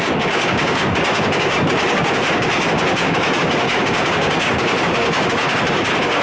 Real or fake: fake